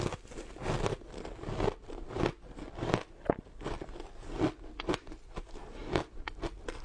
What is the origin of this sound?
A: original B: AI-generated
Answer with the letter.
A